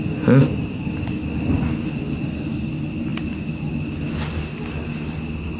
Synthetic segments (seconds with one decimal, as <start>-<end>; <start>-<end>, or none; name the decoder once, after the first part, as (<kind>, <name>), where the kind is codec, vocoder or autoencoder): none